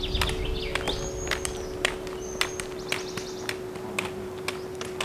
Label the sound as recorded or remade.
recorded